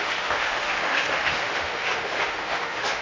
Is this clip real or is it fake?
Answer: fake